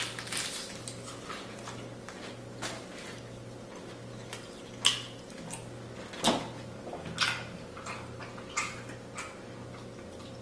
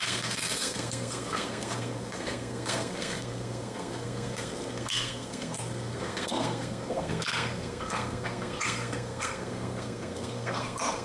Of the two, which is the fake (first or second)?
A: second